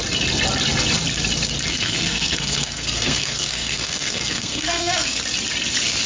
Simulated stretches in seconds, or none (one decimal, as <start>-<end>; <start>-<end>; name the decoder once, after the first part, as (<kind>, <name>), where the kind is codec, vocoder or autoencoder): 1.7-5.2 (codec, SNAC)